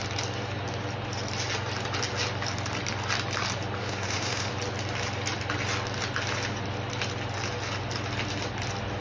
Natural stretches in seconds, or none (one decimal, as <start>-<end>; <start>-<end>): 0.0-3.8; 4.5-9.0